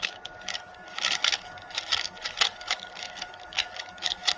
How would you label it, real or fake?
fake